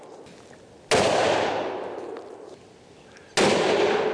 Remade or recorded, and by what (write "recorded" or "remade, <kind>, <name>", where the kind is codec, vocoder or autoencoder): recorded